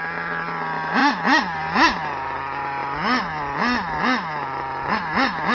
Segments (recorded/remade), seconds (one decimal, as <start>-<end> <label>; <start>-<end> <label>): 0.0-5.5 recorded

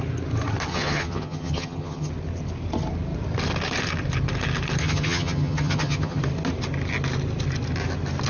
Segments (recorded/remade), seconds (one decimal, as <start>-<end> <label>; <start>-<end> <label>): 0.0-0.7 recorded; 0.7-2.1 remade; 2.1-4.8 recorded; 4.8-6.2 remade; 6.2-8.3 recorded

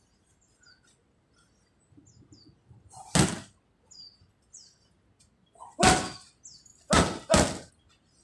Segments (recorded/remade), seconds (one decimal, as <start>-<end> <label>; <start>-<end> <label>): 0.0-8.2 recorded

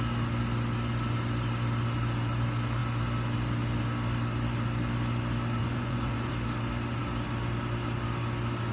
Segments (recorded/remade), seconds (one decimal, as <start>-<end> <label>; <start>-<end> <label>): 0.0-5.6 recorded; 5.6-6.3 remade; 6.3-8.7 recorded

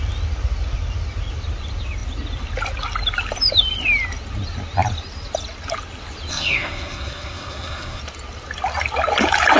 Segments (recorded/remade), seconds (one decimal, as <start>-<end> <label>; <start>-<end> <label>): 0.0-6.3 recorded; 6.3-8.0 remade; 8.0-9.6 recorded

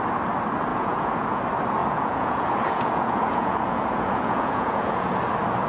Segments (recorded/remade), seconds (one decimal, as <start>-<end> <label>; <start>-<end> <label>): 0.0-0.7 recorded; 0.7-1.4 remade; 1.4-1.8 recorded; 1.8-5.2 remade; 5.2-5.7 recorded